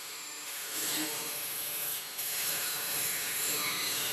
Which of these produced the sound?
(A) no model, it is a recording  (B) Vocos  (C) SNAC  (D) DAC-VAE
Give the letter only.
D